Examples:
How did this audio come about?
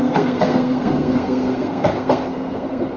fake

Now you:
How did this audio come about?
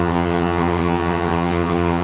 fake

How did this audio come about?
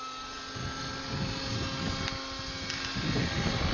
real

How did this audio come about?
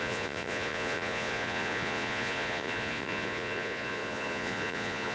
fake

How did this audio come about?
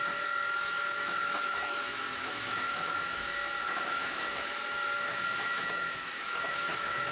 fake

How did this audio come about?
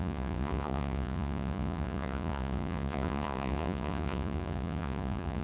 fake